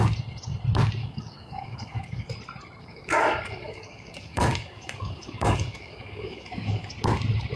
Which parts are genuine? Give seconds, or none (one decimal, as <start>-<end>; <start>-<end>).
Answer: 0.0-1.0; 2.3-2.8; 6.9-7.6